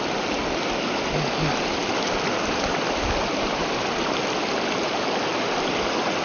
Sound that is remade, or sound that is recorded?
recorded